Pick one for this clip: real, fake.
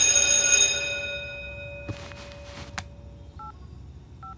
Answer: real